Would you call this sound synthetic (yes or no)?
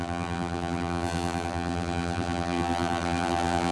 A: yes